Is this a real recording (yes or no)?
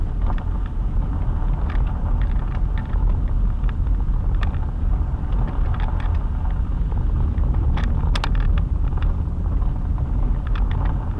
yes